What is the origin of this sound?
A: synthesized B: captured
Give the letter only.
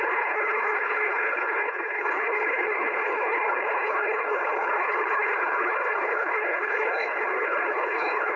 A